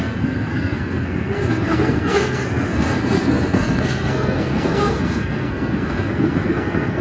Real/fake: fake